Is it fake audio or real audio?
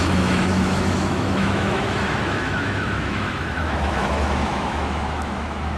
fake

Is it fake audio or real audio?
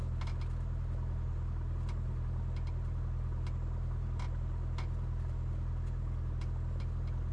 real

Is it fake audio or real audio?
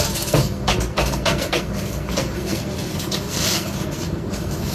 fake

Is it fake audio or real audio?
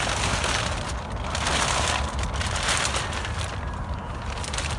real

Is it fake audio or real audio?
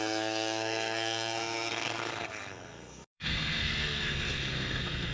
fake